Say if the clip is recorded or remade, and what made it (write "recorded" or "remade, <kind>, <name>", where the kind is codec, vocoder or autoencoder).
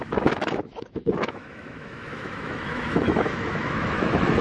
remade, autoencoder, DAC-VAE